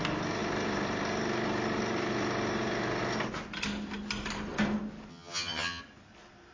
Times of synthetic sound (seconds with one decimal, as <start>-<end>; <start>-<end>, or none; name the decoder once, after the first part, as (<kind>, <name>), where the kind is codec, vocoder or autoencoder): 5.1-5.8 (vocoder, HiFi-GAN)

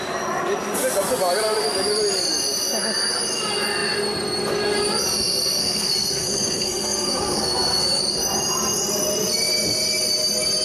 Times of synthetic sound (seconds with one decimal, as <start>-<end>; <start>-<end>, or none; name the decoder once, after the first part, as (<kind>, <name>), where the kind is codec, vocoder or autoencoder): 5.6-8.0 (codec, SNAC)